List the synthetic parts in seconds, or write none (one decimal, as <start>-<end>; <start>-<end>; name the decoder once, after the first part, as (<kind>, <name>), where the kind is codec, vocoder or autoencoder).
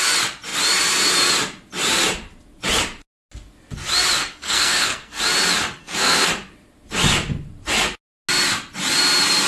4.2-5.2 (codec, SNAC); 5.8-6.3